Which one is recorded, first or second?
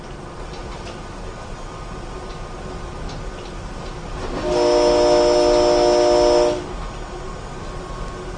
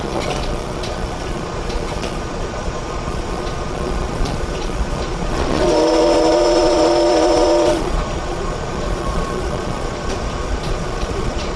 first